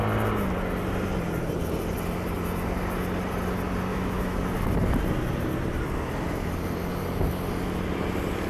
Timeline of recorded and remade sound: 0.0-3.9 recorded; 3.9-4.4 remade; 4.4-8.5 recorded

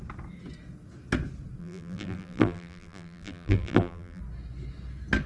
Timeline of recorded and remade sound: 0.0-1.6 recorded; 1.6-4.2 remade; 4.2-5.3 recorded